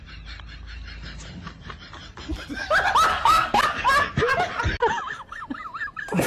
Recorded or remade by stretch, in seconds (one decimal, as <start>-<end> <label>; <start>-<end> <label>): 0.0-3.1 recorded; 3.1-3.6 remade; 3.6-6.3 recorded